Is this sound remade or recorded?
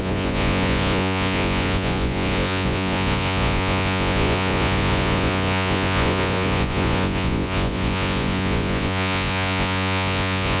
remade